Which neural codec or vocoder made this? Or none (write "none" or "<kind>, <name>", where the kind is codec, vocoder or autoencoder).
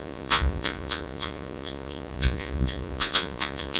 vocoder, Vocos